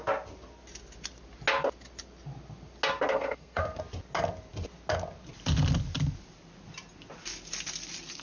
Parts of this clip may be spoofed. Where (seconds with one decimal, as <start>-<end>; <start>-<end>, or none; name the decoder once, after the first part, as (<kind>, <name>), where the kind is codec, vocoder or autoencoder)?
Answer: 3.1-3.8 (codec, SNAC)